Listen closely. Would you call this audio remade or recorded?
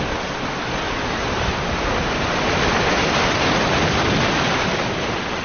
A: recorded